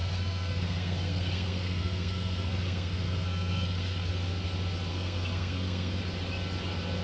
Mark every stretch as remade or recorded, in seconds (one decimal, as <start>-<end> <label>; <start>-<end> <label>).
0.0-4.1 remade; 4.1-4.9 recorded; 4.9-6.0 remade; 6.0-7.0 recorded